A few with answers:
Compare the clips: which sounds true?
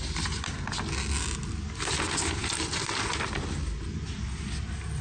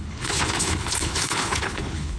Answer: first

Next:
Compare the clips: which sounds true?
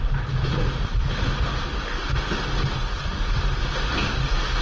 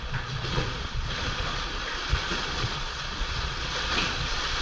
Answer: first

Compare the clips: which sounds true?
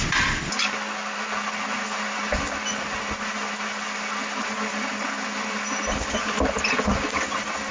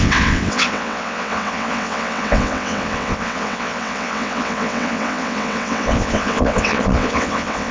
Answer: first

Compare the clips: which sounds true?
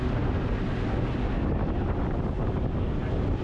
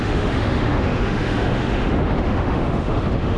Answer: first